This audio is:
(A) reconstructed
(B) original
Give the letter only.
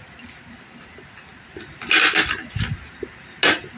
B